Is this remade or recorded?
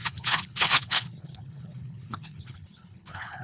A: remade